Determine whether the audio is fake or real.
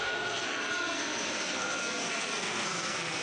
fake